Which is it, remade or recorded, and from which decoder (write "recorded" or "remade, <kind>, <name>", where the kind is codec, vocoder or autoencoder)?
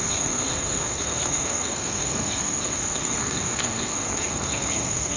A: remade, codec, SNAC